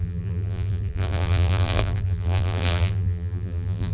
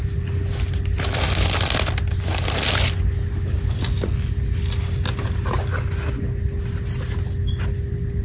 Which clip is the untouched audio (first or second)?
second